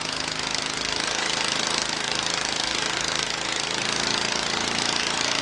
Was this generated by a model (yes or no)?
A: yes